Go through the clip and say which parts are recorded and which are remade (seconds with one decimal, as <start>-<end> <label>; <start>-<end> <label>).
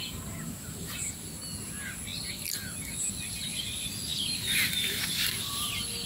0.0-6.1 recorded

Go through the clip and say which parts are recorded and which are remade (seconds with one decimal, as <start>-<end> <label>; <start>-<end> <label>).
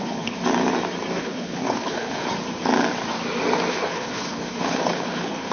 0.0-0.4 remade; 0.4-1.2 recorded; 1.2-2.3 remade; 2.3-3.7 recorded; 3.7-5.5 remade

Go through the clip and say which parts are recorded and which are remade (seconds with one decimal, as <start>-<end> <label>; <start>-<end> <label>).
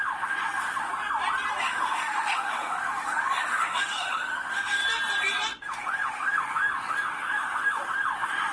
0.0-0.9 remade; 0.9-1.6 recorded; 1.6-4.8 remade; 4.8-5.6 recorded; 5.6-8.5 remade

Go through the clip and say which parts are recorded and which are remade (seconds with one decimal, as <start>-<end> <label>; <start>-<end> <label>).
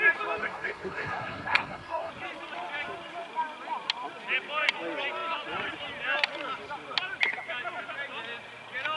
0.0-0.4 recorded; 0.4-2.1 remade; 2.1-9.0 recorded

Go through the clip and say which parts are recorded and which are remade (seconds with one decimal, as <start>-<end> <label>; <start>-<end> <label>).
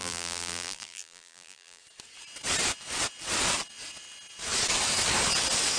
0.0-1.8 remade; 1.8-5.8 recorded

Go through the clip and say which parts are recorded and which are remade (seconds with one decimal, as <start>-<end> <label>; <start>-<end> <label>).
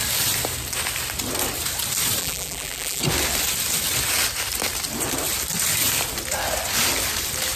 0.0-2.2 recorded; 2.2-3.0 remade; 3.0-7.6 recorded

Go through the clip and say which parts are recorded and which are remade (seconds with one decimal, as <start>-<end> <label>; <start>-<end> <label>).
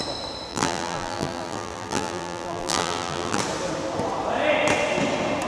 0.0-0.5 recorded; 0.5-3.4 remade; 3.4-5.5 recorded